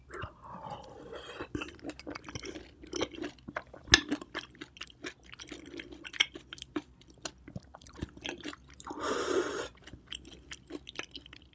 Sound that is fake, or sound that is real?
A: real